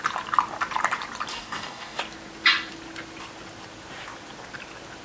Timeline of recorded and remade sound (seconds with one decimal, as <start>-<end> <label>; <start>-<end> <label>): 0.0-1.3 recorded; 1.3-2.0 remade; 2.0-5.0 recorded